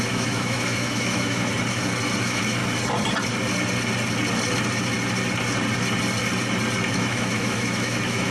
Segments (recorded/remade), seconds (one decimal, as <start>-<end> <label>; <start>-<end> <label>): 0.0-1.5 remade; 1.5-2.2 recorded; 2.2-2.6 remade; 2.6-6.9 recorded; 6.9-8.3 remade